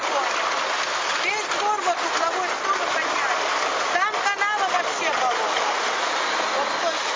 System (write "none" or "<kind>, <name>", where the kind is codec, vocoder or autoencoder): none